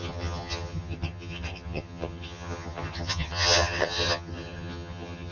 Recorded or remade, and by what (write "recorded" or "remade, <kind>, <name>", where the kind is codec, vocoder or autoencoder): remade, vocoder, HiFi-GAN